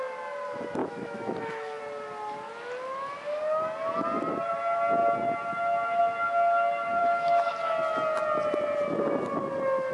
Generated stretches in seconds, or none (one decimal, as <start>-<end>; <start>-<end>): 0.8-1.8; 7.0-7.5